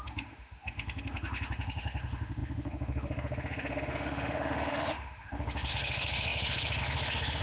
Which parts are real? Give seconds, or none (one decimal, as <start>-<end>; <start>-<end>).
none